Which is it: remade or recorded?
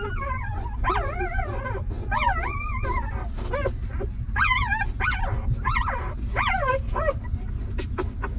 recorded